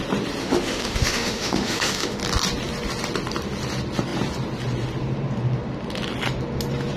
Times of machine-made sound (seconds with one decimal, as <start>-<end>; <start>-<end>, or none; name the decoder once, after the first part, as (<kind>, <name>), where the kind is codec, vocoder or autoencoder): 0.4-2.2 (autoencoder, DAC-VAE)